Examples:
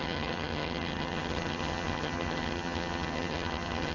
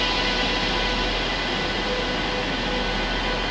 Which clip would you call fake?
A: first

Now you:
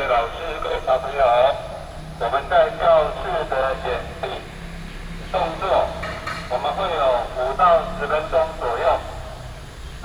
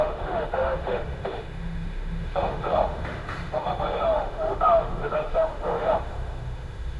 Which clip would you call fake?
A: second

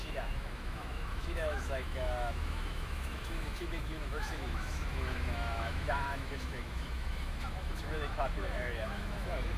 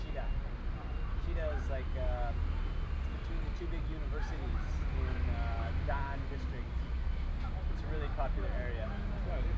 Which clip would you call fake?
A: first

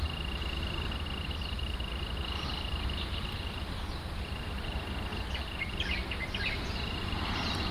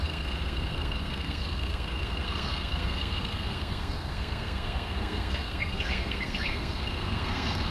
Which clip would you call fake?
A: second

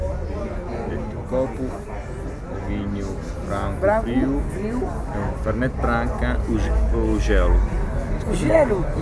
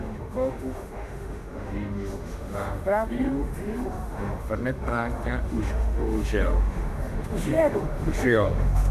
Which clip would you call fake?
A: second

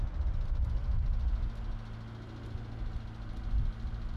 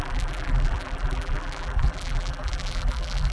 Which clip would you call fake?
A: second